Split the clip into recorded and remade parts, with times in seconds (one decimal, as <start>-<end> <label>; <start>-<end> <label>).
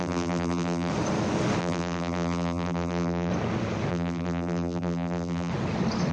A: 0.0-0.9 remade; 0.9-1.6 recorded; 1.6-3.3 remade; 3.3-3.9 recorded; 3.9-5.5 remade; 5.5-6.1 recorded